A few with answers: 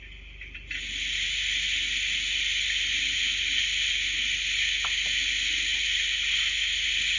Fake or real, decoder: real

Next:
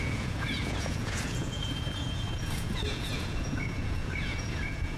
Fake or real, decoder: fake, vocoder, Vocos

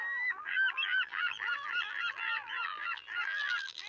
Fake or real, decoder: fake, vocoder, BigVGAN v2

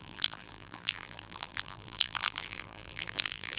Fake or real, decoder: fake, vocoder, BigVGAN v2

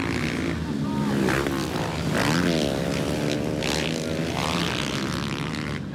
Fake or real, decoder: real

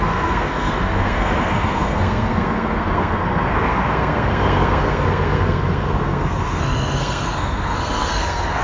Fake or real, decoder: fake, codec, SNAC